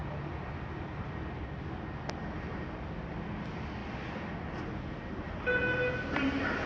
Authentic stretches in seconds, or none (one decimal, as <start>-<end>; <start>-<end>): 0.0-6.7